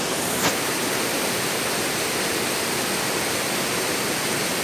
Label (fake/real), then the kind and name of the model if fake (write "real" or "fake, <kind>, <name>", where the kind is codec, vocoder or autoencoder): real